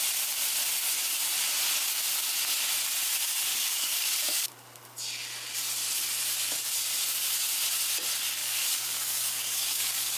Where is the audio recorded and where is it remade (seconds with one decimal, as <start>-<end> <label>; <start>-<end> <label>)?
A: 0.0-3.5 recorded; 3.5-4.5 remade; 4.5-8.4 recorded; 8.4-10.2 remade